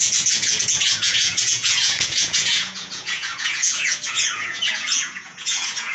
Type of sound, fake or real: fake